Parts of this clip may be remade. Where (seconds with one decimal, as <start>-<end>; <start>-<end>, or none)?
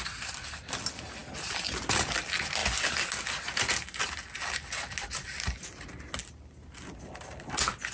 none